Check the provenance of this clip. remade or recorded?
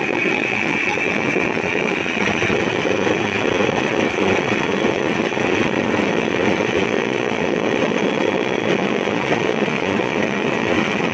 remade